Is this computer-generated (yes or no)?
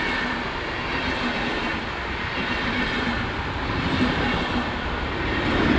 no